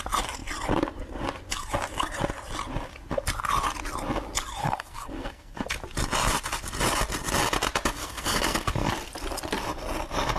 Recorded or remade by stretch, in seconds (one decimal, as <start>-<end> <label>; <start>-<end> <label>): 0.0-4.6 recorded; 4.6-5.7 remade; 5.7-8.0 recorded; 8.0-8.9 remade; 8.9-10.4 recorded